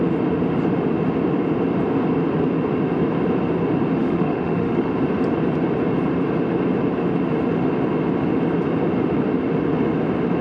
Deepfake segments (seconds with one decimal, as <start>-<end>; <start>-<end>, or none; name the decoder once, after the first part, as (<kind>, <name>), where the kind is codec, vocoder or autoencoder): 4.0-4.9 (autoencoder, DAC-VAE)